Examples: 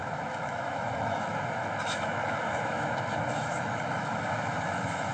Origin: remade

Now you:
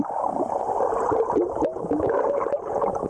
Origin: recorded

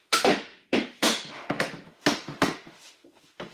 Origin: remade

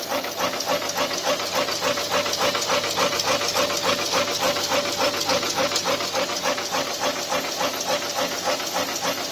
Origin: recorded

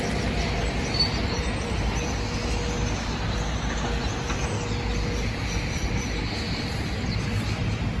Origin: recorded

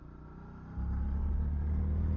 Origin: recorded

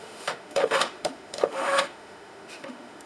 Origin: remade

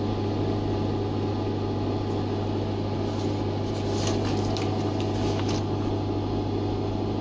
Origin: recorded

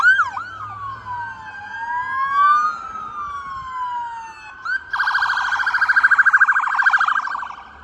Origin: recorded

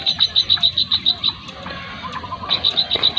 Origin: recorded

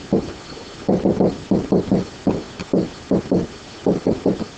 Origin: recorded